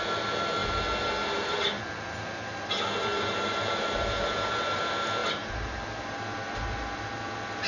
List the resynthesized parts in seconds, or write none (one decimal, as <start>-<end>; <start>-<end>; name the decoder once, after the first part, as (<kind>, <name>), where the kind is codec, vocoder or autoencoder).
0.6-1.8 (vocoder, BigVGAN v2); 3.0-4.8; 5.2-5.8